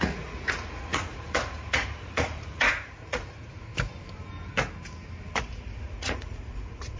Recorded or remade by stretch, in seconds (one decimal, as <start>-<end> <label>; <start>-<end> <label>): 0.0-3.7 remade; 3.7-5.4 recorded; 5.4-7.0 remade